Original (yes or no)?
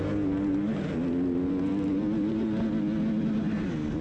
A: yes